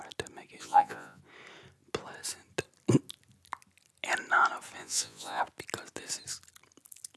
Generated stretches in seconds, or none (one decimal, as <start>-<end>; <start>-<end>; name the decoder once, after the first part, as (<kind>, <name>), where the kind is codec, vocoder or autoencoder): 0.6-1.2 (vocoder, Vocos); 4.8-5.4

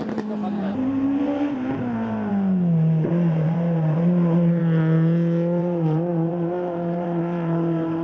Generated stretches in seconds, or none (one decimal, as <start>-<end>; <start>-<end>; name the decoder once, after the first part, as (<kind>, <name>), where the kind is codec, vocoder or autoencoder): 0.0-2.3 (vocoder, BigVGAN v2); 3.1-4.6; 5.6-8.0